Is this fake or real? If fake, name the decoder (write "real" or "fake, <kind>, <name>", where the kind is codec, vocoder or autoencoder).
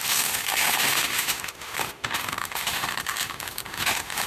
fake, autoencoder, DAC-VAE